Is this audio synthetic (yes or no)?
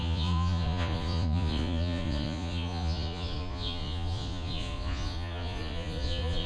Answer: yes